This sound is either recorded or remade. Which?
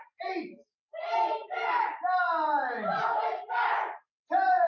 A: recorded